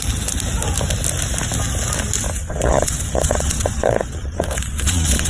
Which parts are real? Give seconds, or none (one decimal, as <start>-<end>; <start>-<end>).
0.0-2.4